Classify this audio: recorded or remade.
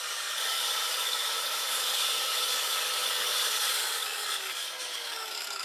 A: remade